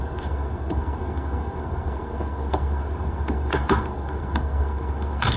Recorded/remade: remade